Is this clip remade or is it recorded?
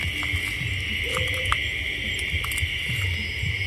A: recorded